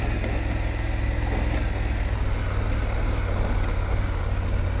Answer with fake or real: real